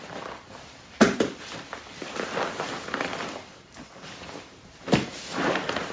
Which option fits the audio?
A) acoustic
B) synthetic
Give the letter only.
B